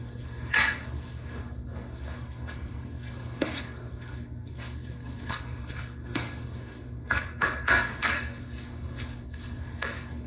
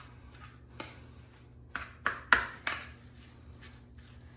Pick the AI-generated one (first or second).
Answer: first